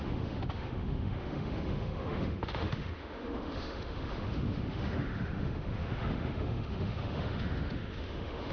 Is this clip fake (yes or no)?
yes